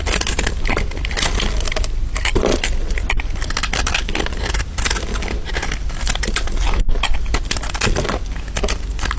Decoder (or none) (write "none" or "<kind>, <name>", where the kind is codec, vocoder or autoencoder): none